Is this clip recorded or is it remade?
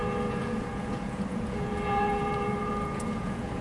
remade